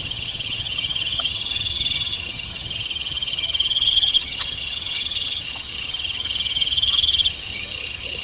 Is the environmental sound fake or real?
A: fake